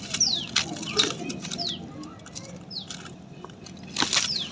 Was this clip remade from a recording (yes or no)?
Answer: no